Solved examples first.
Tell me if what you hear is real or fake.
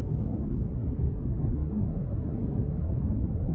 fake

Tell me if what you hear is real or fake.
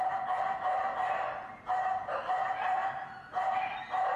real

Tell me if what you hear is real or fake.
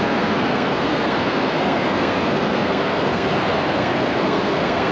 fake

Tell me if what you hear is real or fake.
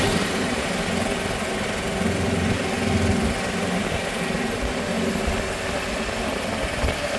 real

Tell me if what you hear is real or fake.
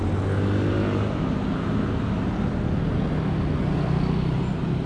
real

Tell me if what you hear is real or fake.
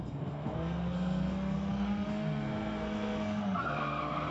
fake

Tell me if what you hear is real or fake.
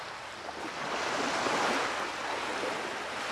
real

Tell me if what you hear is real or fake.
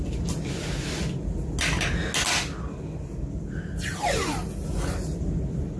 real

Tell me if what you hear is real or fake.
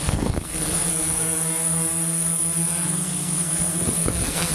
fake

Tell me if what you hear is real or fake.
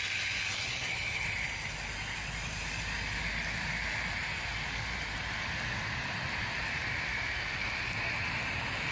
real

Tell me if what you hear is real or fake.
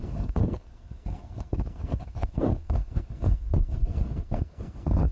fake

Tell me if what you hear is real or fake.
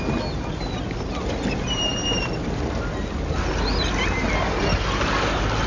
real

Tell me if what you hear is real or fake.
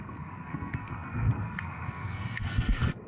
fake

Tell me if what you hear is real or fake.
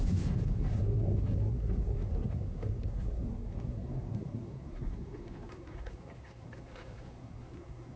fake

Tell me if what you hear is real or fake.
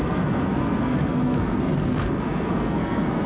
fake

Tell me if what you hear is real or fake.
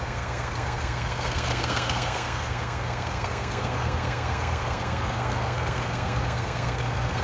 fake